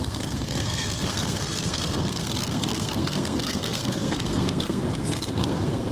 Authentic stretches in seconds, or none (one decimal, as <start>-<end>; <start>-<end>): none